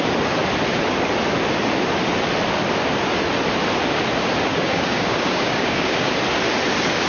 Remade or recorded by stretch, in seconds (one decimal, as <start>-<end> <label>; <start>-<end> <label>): 0.0-4.5 recorded; 4.5-6.1 remade; 6.1-7.1 recorded